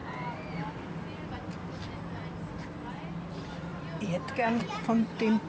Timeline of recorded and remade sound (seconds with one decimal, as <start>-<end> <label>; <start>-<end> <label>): 0.0-3.3 recorded; 3.3-5.5 remade